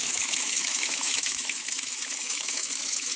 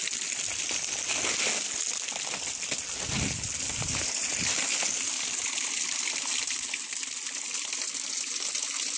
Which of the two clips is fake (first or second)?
first